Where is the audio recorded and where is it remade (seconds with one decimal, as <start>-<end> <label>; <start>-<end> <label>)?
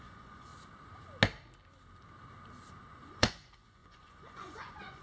0.0-0.5 remade; 0.5-3.1 recorded; 3.1-5.0 remade